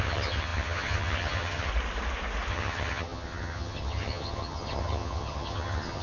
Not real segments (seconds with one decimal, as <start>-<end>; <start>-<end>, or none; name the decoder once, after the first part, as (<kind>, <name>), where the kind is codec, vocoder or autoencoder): 0.0-1.7 (vocoder, HiFi-GAN); 2.5-6.0